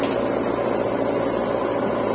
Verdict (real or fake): real